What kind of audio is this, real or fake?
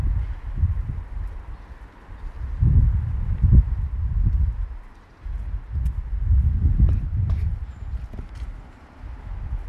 real